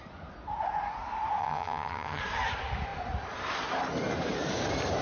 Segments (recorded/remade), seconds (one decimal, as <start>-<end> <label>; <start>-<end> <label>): 0.0-1.4 recorded; 1.4-2.2 remade; 2.2-5.0 recorded